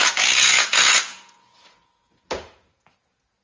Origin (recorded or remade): remade